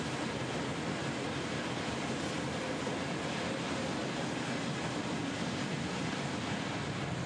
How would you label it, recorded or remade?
recorded